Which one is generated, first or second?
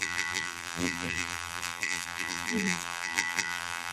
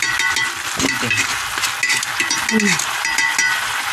first